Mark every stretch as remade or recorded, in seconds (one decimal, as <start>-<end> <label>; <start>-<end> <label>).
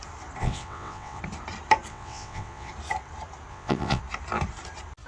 0.0-0.4 recorded; 0.4-1.2 remade; 1.2-1.9 recorded; 1.9-2.7 remade; 2.7-3.5 recorded; 3.5-4.0 remade; 4.0-5.1 recorded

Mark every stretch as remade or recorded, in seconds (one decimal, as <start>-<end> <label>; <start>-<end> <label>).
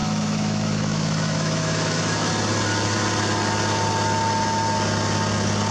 0.0-2.3 remade; 2.3-5.7 recorded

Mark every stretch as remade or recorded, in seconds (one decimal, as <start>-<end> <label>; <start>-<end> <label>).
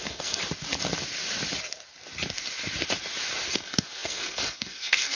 0.0-0.4 remade; 0.4-3.5 recorded; 3.5-5.1 remade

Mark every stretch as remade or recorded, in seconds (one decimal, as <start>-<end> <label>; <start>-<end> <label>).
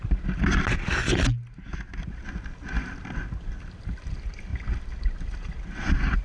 0.0-6.2 recorded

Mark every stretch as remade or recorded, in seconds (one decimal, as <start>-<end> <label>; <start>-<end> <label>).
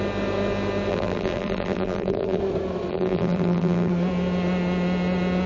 0.0-0.9 recorded; 0.9-2.4 remade; 2.4-2.9 recorded; 2.9-3.9 remade; 3.9-5.5 recorded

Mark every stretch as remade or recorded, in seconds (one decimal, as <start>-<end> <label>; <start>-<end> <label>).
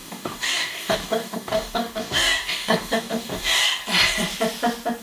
0.0-3.8 remade; 3.8-5.0 recorded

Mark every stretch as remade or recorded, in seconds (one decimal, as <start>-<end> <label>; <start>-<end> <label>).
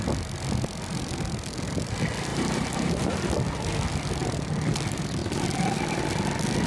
0.0-2.3 recorded; 2.3-3.3 remade; 3.3-6.7 recorded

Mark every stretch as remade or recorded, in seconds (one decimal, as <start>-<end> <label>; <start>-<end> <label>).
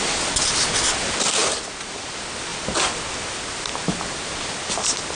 0.0-5.1 recorded